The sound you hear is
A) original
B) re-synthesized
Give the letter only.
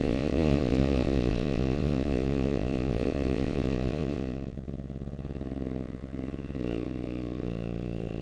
B